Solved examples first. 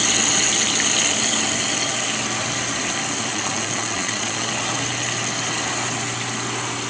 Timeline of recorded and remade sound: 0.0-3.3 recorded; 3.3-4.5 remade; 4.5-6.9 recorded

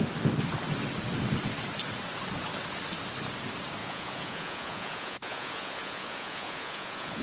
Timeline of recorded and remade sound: 0.0-3.8 recorded; 3.8-7.2 remade

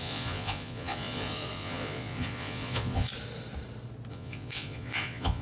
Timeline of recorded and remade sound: 0.0-3.1 remade; 3.1-4.1 recorded; 4.1-5.4 remade

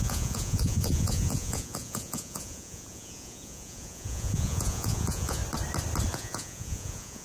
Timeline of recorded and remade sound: 0.0-5.4 remade; 5.4-6.1 recorded; 6.1-7.2 remade

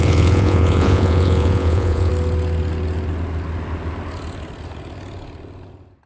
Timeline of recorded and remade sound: 0.0-2.1 remade; 2.1-6.1 recorded

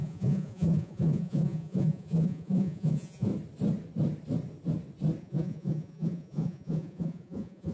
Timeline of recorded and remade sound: 0.0-3.3 remade; 3.3-5.2 recorded; 5.2-7.7 remade

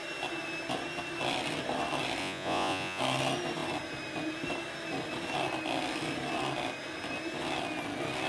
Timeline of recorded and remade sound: 0.0-2.2 recorded; 2.2-3.0 remade; 3.0-8.3 recorded

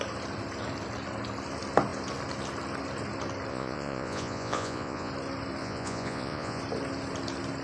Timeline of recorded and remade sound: 0.0-3.5 recorded; 3.5-5.1 remade; 5.1-5.6 recorded; 5.6-6.6 remade; 6.6-7.6 recorded